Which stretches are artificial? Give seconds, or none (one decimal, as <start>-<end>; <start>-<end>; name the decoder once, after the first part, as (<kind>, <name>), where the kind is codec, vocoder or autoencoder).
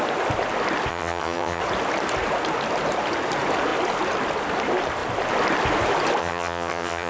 0.9-1.6 (vocoder, HiFi-GAN); 6.2-7.1